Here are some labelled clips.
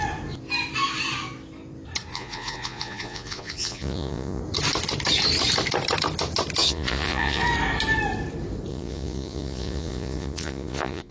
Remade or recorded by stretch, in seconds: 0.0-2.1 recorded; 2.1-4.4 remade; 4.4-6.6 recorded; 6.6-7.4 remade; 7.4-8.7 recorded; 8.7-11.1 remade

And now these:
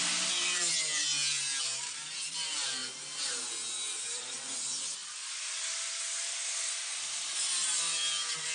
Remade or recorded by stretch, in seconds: 0.0-1.1 remade; 1.1-1.6 recorded; 1.6-2.8 remade; 2.8-3.7 recorded; 3.7-8.5 remade

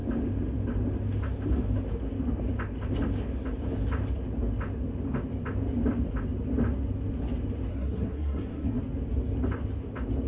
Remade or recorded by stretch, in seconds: 0.0-7.7 recorded; 7.7-8.8 remade; 8.8-10.3 recorded

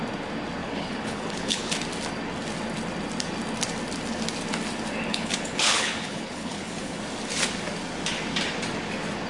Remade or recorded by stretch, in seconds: 0.0-0.6 recorded; 0.6-1.7 remade; 1.7-5.1 recorded; 5.1-7.0 remade; 7.0-9.3 recorded

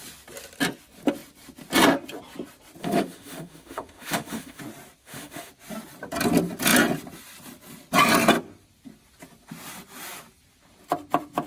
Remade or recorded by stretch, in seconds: 0.0-2.8 recorded; 2.8-4.6 remade; 4.6-5.0 recorded; 5.0-5.5 remade; 5.5-11.5 recorded

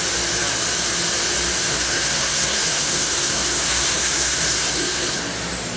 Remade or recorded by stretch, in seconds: 0.0-1.7 recorded; 1.7-5.2 remade; 5.2-5.8 recorded

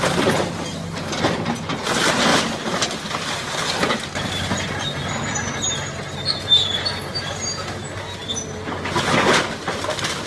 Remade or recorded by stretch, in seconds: 0.0-10.3 recorded

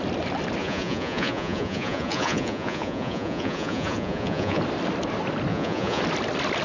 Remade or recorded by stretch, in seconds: 0.0-0.6 recorded; 0.6-4.6 remade; 4.6-5.5 recorded; 5.5-6.0 remade; 6.0-6.6 recorded